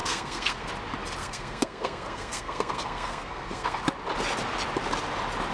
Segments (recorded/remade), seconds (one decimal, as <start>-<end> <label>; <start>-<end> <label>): 0.0-0.7 remade; 0.7-1.2 recorded; 1.2-3.8 remade; 3.8-5.5 recorded